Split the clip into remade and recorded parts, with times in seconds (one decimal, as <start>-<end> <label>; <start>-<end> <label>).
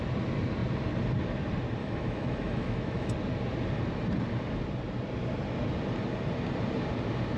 0.0-1.8 recorded; 1.8-3.1 remade; 3.1-7.4 recorded